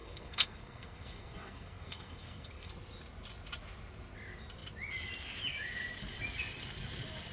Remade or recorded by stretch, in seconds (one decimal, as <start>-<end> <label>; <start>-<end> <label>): 0.0-2.7 remade; 2.7-7.3 recorded